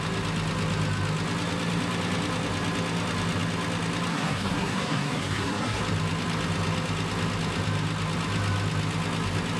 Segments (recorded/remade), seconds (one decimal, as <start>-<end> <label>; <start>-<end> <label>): 0.0-4.1 recorded; 4.1-5.8 remade; 5.8-9.6 recorded